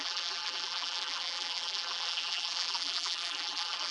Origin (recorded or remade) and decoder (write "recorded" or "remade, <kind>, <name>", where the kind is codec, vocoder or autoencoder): remade, vocoder, BigVGAN v2